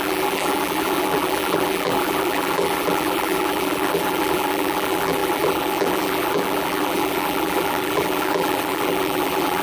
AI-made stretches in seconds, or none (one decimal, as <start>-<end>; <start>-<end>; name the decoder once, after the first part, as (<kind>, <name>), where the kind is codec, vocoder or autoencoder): 0.0-9.6 (vocoder, BigVGAN v2)